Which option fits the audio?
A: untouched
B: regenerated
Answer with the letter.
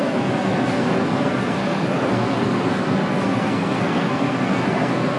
B